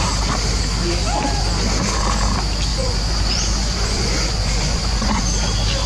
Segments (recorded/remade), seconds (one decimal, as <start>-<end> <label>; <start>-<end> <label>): 0.0-2.7 recorded; 2.7-5.2 remade; 5.2-5.9 recorded